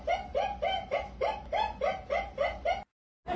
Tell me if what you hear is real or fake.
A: real